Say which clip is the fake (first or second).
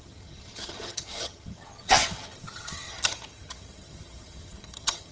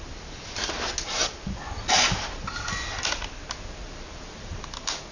first